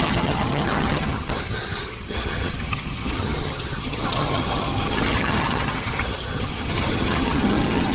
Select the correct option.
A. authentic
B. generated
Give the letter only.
B